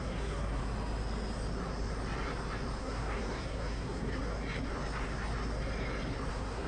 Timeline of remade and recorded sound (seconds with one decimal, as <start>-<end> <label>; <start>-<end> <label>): 0.0-0.6 remade; 0.6-2.8 recorded; 2.8-4.2 remade; 4.2-6.3 recorded; 6.3-6.7 remade

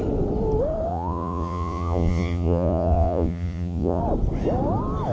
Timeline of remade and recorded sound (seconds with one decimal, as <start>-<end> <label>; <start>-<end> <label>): 0.0-0.9 recorded; 0.9-4.0 remade; 4.0-5.1 recorded

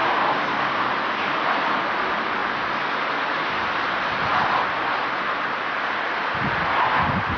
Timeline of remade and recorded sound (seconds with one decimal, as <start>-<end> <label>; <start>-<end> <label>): 0.0-0.9 remade; 0.9-7.4 recorded

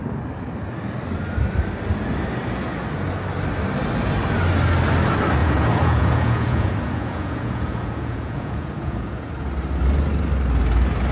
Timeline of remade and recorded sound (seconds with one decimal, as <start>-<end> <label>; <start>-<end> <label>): 0.0-5.4 recorded; 5.4-9.3 remade; 9.3-11.1 recorded

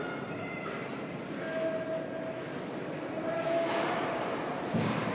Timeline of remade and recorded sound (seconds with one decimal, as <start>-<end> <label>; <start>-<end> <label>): 0.0-0.9 remade; 0.9-4.0 recorded; 4.0-5.1 remade

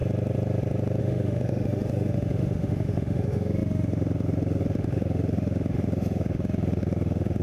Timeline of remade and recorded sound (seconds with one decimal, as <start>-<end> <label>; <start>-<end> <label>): 0.0-1.0 recorded; 1.0-7.4 remade